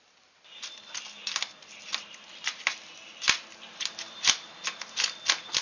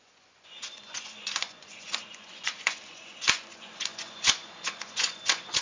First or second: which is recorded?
first